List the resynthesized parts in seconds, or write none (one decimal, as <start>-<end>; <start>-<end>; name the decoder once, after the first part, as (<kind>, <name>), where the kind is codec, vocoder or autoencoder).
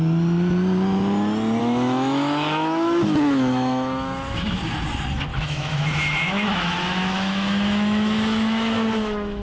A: 1.6-4.6 (autoencoder, DAC-VAE); 5.3-9.4